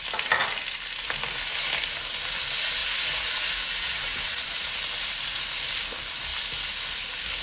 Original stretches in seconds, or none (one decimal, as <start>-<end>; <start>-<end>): 0.0-2.8; 4.5-7.4